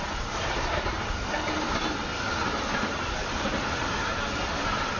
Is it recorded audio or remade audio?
recorded